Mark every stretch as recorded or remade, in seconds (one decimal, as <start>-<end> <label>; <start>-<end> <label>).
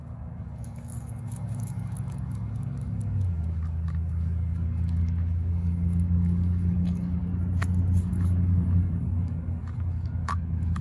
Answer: 0.0-7.3 remade; 7.3-8.0 recorded; 8.0-10.8 remade